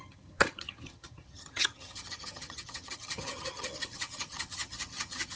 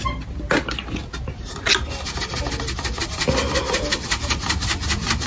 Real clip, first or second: second